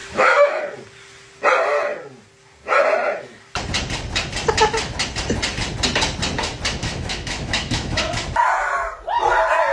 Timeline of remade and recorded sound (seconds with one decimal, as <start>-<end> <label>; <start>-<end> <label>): 0.0-0.6 remade; 0.6-6.8 recorded; 6.8-8.0 remade; 8.0-9.7 recorded